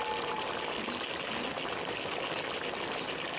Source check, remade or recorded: recorded